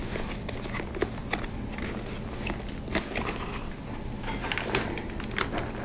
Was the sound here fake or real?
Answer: real